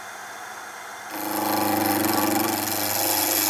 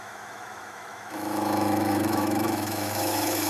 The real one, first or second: first